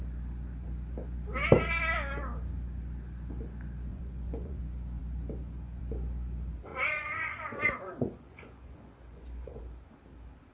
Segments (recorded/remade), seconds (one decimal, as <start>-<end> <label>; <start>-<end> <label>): 0.0-3.9 recorded; 3.9-4.6 remade; 4.6-6.7 recorded; 6.7-9.6 remade; 9.6-10.5 recorded